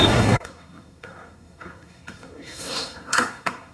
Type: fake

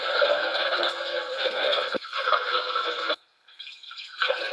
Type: fake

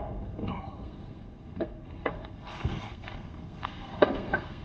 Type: fake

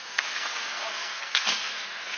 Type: fake